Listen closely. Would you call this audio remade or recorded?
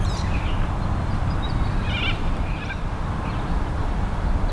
remade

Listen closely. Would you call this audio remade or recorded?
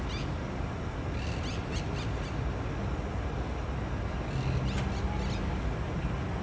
recorded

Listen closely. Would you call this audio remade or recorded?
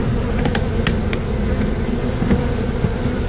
recorded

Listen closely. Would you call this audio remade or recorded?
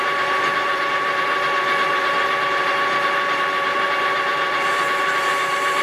remade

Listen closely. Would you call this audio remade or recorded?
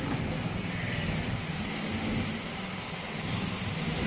recorded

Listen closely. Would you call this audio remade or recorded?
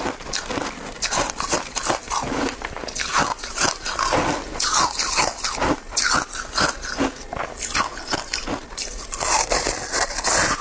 recorded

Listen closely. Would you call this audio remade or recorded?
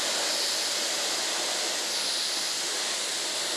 recorded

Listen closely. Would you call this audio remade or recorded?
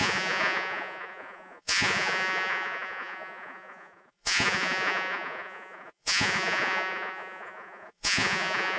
remade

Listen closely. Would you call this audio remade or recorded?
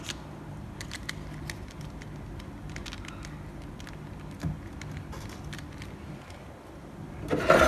recorded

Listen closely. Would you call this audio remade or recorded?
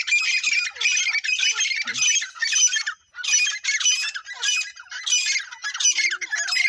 recorded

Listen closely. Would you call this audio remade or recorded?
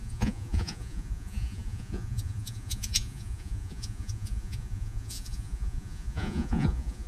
remade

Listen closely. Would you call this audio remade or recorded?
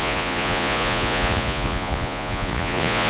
remade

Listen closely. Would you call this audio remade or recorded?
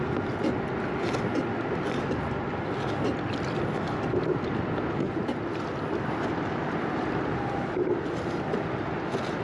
recorded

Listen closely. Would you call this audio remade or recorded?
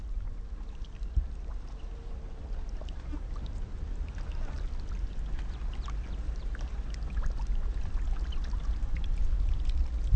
recorded